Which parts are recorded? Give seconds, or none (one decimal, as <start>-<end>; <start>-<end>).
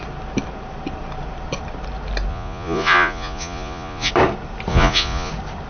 0.0-2.3; 4.1-4.7; 5.3-5.7